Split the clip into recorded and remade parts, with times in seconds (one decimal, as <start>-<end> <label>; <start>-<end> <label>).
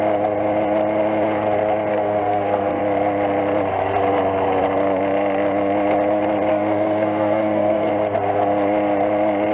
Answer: 0.0-1.9 recorded; 1.9-2.8 remade; 2.8-6.5 recorded; 6.5-7.9 remade; 7.9-9.5 recorded